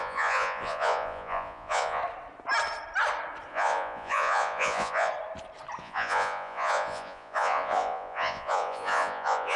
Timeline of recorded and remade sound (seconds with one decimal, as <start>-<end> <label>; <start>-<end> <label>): 0.0-2.0 remade; 2.0-3.5 recorded; 3.5-5.1 remade; 5.1-5.8 recorded; 5.8-9.6 remade